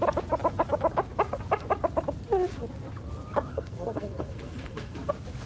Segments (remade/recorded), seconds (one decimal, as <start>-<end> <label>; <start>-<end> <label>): 0.0-3.5 recorded; 3.5-5.1 remade; 5.1-5.5 recorded